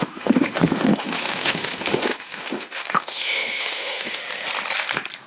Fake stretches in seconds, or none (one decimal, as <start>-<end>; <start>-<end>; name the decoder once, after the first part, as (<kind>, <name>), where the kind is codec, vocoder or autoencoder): 0.0-4.2 (autoencoder, DAC-VAE)

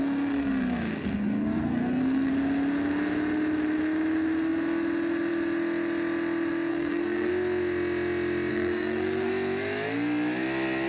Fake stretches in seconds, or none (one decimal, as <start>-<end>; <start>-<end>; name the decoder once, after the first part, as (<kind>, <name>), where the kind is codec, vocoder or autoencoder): 0.0-2.3 (codec, SNAC); 6.7-7.3; 8.5-9.3

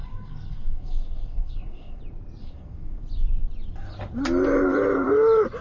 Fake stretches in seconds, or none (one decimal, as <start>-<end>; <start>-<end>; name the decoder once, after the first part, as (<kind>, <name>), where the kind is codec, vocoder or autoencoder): 0.0-2.0 (codec, SNAC); 2.4-3.0

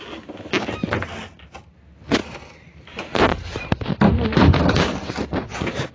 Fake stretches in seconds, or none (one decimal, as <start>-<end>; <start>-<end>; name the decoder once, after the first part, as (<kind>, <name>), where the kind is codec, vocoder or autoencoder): 2.2-5.9 (vocoder, BigVGAN v2)